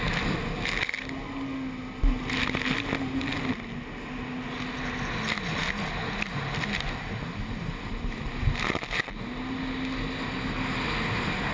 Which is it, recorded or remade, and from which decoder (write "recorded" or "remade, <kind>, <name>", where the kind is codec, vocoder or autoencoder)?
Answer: recorded